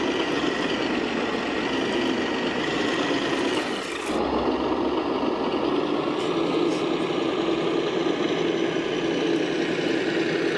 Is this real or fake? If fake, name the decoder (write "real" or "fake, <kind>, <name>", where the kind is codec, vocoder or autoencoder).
real